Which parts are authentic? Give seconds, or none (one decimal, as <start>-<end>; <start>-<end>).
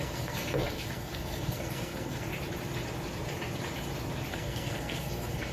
2.3-4.3